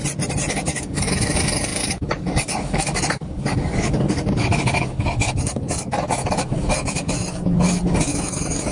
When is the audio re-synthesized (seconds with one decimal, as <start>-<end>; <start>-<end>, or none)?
0.5-8.7